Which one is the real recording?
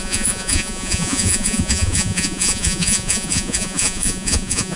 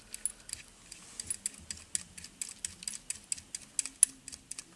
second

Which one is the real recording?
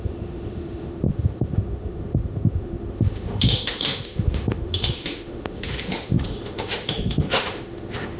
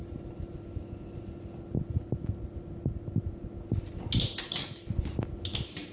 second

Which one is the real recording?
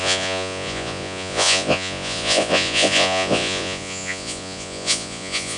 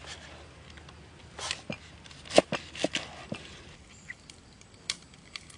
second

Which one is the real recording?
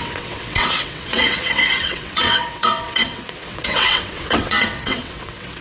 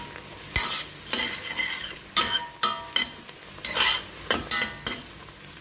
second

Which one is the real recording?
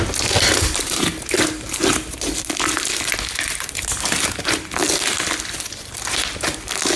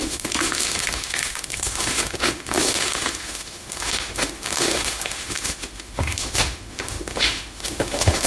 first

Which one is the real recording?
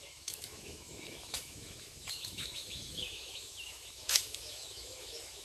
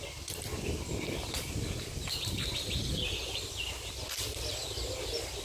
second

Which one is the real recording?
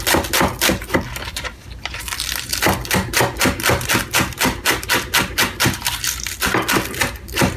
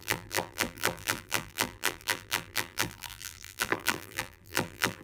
first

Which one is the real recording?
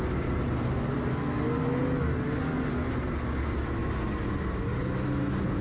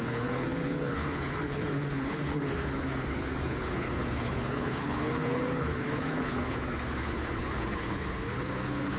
first